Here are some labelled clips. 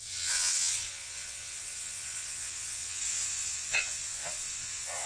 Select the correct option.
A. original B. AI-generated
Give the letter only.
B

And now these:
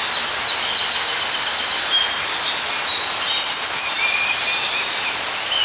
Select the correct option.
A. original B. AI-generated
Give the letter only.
A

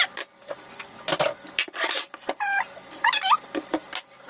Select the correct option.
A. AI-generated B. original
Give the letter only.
B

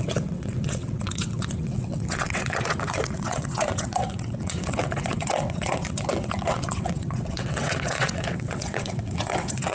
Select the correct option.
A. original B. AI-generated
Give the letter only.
B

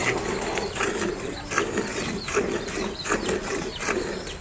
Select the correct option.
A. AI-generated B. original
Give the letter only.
B